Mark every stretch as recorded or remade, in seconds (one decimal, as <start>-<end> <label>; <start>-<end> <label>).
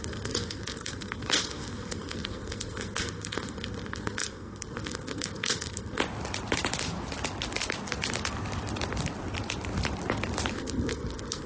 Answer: 0.0-6.0 remade; 6.0-10.5 recorded; 10.5-11.5 remade